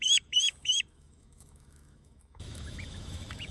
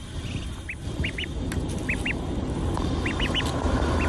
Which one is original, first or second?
second